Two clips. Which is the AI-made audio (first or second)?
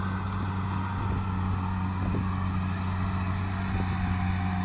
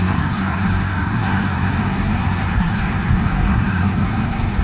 second